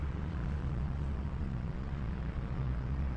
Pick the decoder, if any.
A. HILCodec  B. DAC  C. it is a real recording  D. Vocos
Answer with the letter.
D